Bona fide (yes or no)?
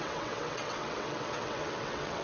no